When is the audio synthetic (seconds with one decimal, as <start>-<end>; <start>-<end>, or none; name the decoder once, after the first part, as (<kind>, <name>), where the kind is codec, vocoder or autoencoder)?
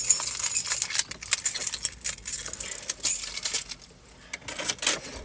none